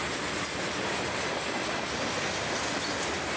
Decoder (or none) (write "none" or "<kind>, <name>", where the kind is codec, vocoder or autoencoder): none